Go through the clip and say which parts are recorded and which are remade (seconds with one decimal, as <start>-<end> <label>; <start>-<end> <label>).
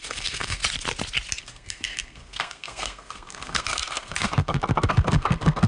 0.0-0.6 remade; 0.6-1.4 recorded; 1.4-5.7 remade